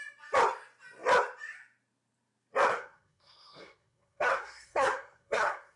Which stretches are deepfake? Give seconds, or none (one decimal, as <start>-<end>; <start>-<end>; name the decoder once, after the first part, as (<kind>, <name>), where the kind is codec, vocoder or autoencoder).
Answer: 2.7-5.8 (codec, SNAC)